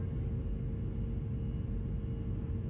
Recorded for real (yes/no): yes